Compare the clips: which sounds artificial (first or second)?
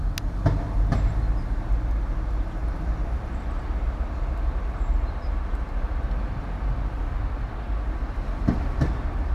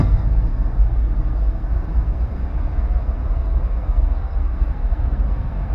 second